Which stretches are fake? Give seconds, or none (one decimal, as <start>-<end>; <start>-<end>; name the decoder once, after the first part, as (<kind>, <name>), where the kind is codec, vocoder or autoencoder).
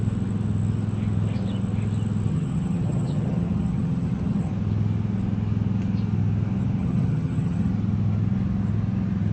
2.3-4.5 (vocoder, HiFi-GAN); 6.8-7.7